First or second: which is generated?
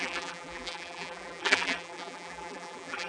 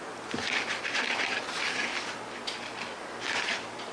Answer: first